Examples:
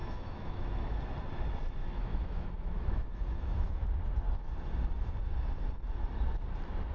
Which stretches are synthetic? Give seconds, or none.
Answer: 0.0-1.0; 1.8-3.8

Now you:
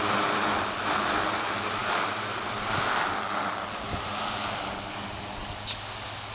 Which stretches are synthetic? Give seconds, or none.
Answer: none

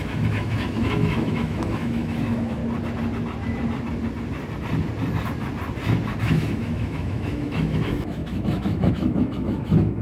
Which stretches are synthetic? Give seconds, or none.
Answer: 0.0-2.6; 6.2-10.0

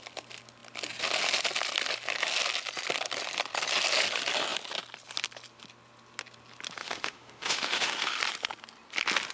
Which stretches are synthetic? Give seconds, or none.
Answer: 6.8-8.2

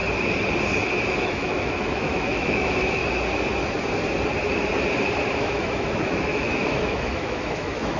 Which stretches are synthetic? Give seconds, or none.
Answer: 1.1-3.0; 5.3-8.0